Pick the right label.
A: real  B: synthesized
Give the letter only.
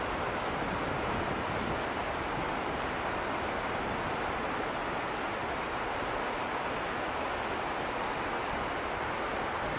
A